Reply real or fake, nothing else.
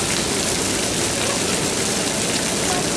real